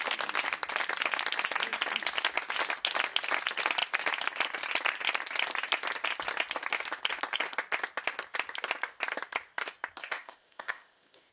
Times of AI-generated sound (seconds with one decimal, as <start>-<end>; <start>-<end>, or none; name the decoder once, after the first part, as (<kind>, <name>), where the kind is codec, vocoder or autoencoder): 10.0-11.3 (codec, ZipCodec)